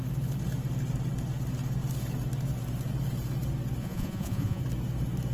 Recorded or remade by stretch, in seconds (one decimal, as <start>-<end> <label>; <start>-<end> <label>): 0.0-3.8 recorded; 3.8-4.6 remade; 4.6-5.3 recorded